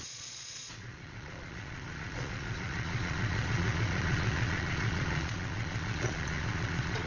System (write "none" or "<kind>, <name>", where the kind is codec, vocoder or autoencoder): vocoder, Vocos